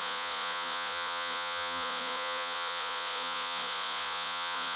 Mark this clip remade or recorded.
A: remade